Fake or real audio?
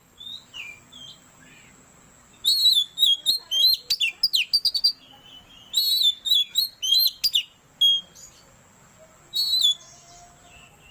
real